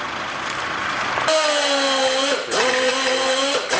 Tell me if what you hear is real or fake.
real